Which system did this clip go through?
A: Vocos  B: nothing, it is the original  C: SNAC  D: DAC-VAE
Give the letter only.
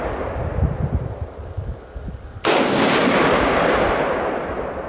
B